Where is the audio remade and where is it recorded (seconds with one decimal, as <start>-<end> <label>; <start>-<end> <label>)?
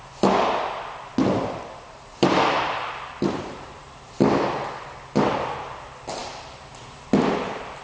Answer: 0.0-2.2 recorded; 2.2-4.0 remade; 4.0-7.8 recorded